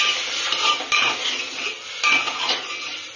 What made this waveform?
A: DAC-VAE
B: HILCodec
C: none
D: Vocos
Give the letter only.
C